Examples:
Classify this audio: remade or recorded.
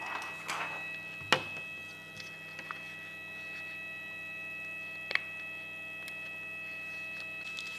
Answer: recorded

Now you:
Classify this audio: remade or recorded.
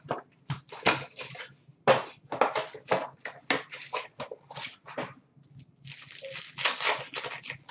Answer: recorded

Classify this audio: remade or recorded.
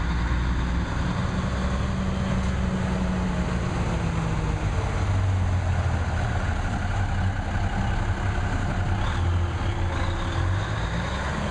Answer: recorded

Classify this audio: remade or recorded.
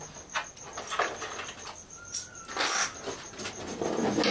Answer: recorded